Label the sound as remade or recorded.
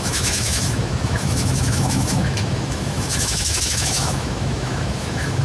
remade